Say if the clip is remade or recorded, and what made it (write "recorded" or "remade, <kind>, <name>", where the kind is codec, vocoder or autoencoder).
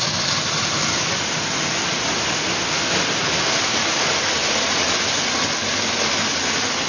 recorded